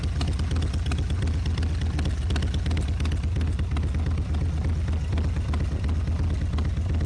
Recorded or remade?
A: recorded